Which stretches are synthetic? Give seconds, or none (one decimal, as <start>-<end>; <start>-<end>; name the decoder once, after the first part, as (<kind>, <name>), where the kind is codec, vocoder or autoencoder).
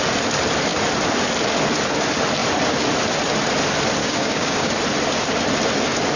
4.0-4.7 (codec, DAC)